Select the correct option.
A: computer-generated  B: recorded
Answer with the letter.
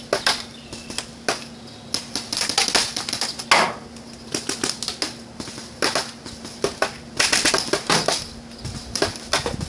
B